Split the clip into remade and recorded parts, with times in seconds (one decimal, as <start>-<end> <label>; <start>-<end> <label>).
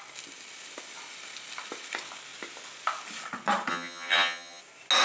0.0-3.7 recorded; 3.7-4.6 remade; 4.6-5.0 recorded